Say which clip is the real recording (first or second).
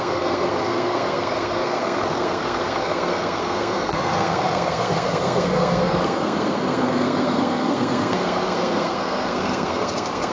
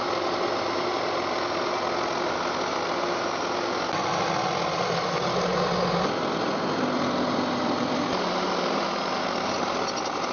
second